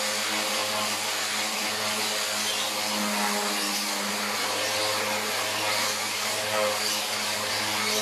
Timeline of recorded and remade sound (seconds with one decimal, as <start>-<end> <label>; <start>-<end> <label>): 0.0-5.8 recorded; 5.8-7.5 remade; 7.5-8.0 recorded